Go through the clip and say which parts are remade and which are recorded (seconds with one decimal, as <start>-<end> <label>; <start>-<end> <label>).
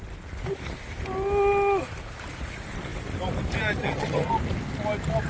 0.0-3.8 recorded; 3.8-4.3 remade; 4.3-5.3 recorded